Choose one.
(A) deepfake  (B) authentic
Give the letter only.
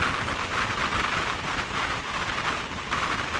B